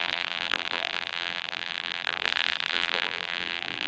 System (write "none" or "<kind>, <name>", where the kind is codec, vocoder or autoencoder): vocoder, BigVGAN v2